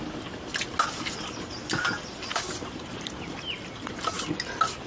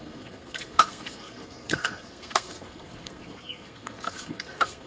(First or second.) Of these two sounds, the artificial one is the second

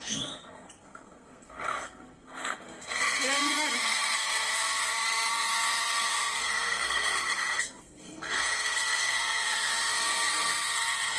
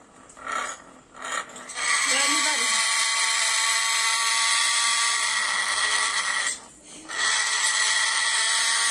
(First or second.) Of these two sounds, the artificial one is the first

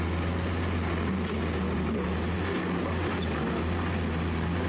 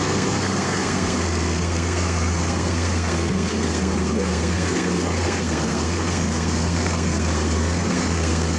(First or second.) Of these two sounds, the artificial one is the second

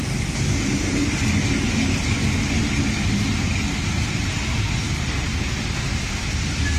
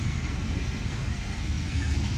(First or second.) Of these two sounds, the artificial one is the second